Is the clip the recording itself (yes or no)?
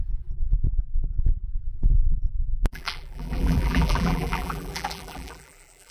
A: no